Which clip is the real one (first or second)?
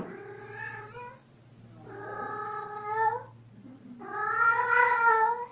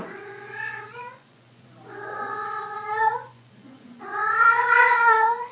first